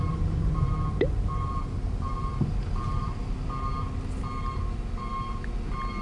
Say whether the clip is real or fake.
real